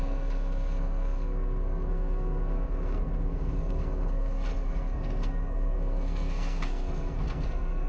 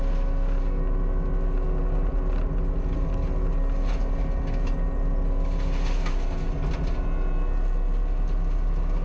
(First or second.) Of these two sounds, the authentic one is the second